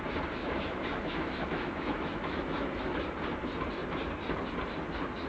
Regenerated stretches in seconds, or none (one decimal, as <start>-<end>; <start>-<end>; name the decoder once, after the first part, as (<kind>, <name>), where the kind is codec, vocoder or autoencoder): 0.4-3.0 (autoencoder, DAC-VAE)